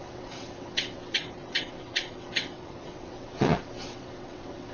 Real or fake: fake